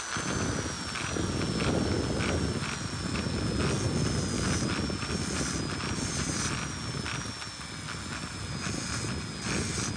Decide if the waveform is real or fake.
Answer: real